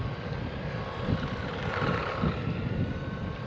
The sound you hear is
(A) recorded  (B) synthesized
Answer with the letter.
A